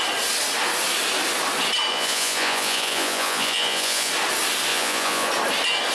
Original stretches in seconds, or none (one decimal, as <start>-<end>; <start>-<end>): 0.0-1.9; 4.1-4.7; 5.3-5.9